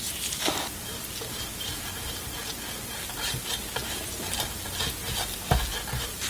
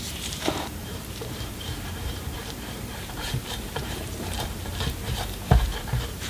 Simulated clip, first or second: second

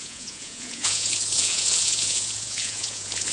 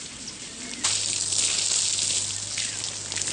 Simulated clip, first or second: first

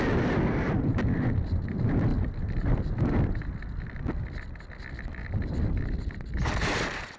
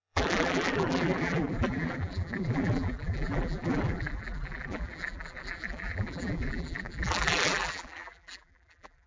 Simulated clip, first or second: second